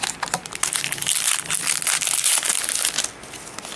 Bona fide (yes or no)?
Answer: yes